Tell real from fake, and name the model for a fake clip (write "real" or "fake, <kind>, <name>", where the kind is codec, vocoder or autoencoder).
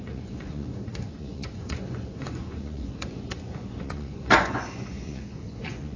fake, vocoder, Vocos